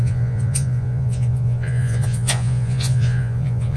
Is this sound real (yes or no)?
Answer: no